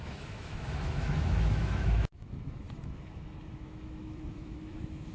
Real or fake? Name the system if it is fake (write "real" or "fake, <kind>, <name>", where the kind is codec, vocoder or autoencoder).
fake, autoencoder, DAC-VAE